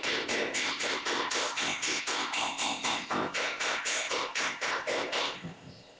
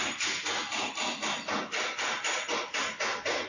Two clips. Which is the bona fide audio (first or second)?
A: second